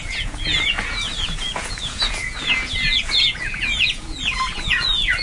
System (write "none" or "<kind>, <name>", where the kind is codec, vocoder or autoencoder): vocoder, Vocos